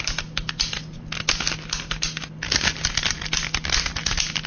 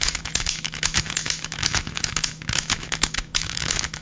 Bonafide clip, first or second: first